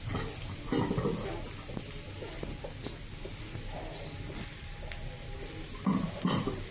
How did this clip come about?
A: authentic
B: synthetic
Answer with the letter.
A